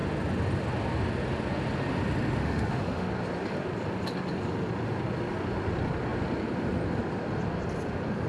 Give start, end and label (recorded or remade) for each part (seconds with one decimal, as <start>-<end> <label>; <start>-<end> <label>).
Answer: 0.0-2.4 recorded; 2.4-3.1 remade; 3.1-8.3 recorded

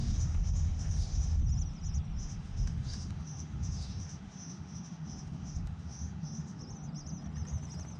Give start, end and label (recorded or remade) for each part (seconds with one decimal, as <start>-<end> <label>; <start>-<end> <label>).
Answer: 0.0-1.4 remade; 1.4-2.2 recorded; 2.2-6.6 remade; 6.6-8.0 recorded

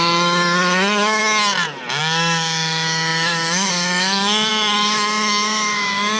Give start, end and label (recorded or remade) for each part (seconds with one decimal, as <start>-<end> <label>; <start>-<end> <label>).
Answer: 0.0-1.2 remade; 1.2-2.0 recorded; 2.0-6.2 remade

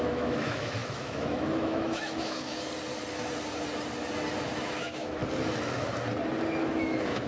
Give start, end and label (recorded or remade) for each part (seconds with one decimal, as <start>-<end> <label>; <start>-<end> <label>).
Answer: 0.0-2.5 remade; 2.5-4.6 recorded; 4.6-5.2 remade; 5.2-6.6 recorded; 6.6-7.3 remade